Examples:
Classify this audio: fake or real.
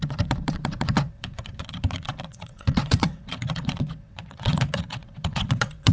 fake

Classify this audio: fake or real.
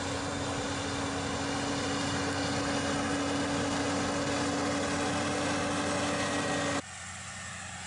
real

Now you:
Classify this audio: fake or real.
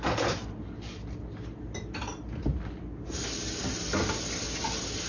real